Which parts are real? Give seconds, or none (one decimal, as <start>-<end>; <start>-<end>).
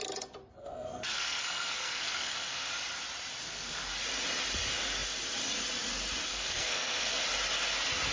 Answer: 0.0-0.6; 2.7-3.4; 3.9-6.3; 7.2-8.1